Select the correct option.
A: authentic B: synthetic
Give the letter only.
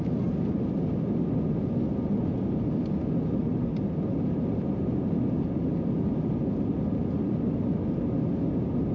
A